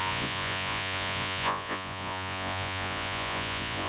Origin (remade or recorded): remade